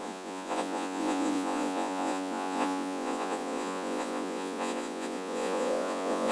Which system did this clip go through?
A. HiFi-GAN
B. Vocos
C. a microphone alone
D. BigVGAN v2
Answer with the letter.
B